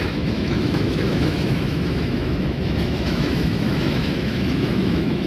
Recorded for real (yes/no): no